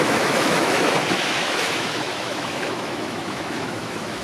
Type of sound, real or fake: fake